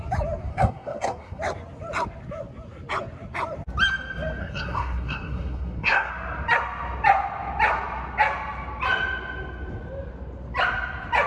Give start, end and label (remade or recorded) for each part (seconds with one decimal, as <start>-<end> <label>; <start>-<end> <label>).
0.0-0.5 recorded; 0.5-1.4 remade; 1.4-4.4 recorded; 4.4-6.1 remade; 6.1-11.3 recorded